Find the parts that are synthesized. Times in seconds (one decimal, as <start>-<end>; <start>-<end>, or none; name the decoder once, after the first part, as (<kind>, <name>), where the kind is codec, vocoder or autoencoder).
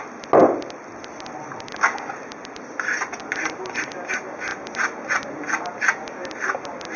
none